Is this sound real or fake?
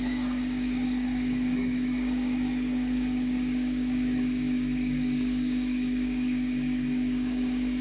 fake